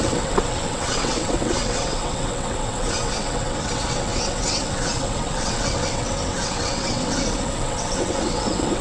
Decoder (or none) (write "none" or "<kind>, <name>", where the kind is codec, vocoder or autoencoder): vocoder, WaveNeXt